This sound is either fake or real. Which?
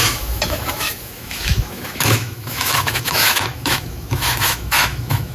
fake